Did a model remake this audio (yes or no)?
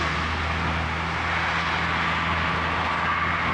no